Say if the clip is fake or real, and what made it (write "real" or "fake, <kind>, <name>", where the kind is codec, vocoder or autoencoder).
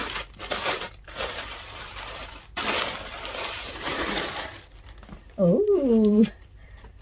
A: fake, vocoder, BigVGAN v2